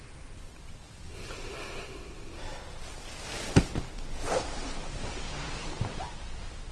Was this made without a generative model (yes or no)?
yes